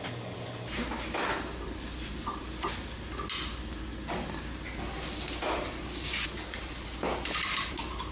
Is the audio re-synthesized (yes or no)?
no